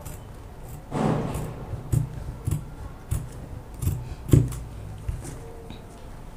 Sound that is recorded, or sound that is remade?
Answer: recorded